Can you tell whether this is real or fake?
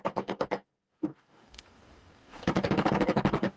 fake